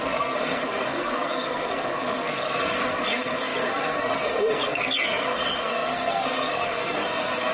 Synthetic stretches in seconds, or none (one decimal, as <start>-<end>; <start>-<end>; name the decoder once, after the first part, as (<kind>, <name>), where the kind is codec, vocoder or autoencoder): 0.0-7.5 (codec, SNAC)